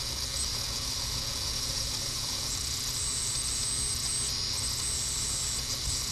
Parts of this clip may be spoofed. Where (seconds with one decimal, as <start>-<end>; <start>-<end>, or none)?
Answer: 0.5-2.5